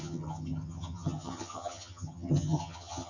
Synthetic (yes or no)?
yes